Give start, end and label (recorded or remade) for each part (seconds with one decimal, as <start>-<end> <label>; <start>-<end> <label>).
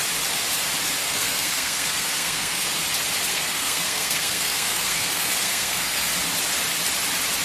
0.0-1.0 recorded; 1.0-2.7 remade; 2.7-3.3 recorded; 3.3-6.1 remade; 6.1-7.4 recorded